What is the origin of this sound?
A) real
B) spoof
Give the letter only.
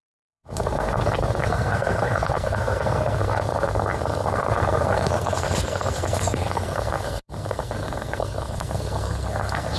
B